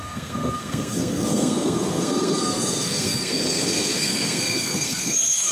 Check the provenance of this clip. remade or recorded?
remade